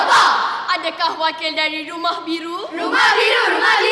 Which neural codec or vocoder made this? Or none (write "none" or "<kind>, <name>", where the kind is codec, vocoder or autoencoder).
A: none